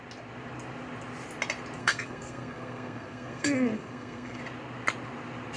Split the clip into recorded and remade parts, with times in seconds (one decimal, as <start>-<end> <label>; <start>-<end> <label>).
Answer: 0.0-1.8 recorded; 1.8-4.4 remade; 4.4-5.6 recorded